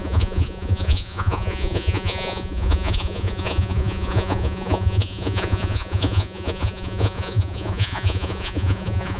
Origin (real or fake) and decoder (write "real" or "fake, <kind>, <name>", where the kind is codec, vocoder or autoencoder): fake, vocoder, Vocos